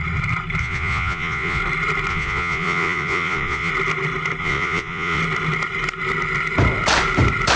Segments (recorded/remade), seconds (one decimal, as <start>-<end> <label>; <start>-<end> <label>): 0.0-0.6 recorded; 0.6-1.6 remade; 1.6-2.1 recorded; 2.1-3.7 remade; 3.7-4.4 recorded; 4.4-5.2 remade; 5.2-7.6 recorded